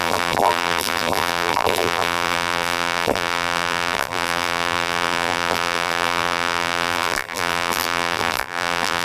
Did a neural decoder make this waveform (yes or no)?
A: yes